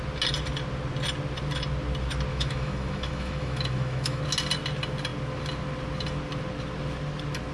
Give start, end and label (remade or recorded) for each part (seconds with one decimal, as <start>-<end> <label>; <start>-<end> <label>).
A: 0.0-2.3 recorded; 2.3-4.2 remade; 4.2-7.5 recorded